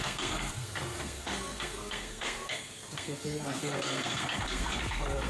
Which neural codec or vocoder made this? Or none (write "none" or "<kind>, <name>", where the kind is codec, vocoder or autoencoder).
codec, SNAC